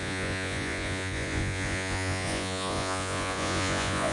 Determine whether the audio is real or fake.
fake